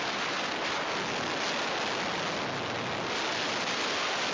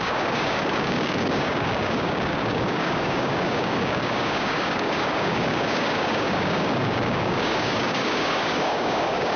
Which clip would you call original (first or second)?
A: first